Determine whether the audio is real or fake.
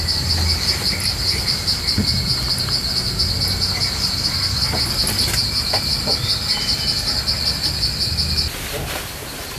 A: real